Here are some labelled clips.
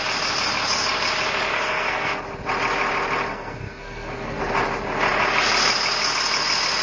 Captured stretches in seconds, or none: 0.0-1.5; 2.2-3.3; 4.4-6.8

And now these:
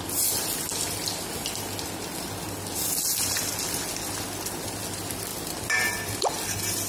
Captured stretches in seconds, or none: 0.0-6.9

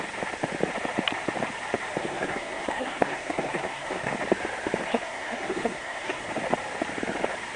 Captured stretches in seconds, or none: 0.0-2.0; 4.1-4.9; 6.3-7.6